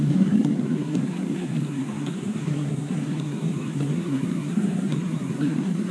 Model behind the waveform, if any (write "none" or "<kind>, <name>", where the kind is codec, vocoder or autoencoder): codec, SNAC